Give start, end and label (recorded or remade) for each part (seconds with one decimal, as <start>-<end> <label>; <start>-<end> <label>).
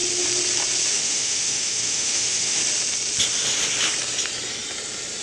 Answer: 0.0-0.9 recorded; 0.9-2.6 remade; 2.6-5.2 recorded